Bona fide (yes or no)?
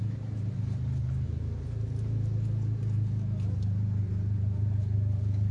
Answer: yes